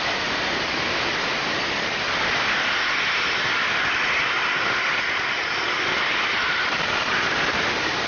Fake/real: real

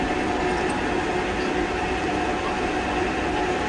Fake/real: real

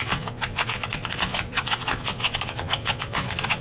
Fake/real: fake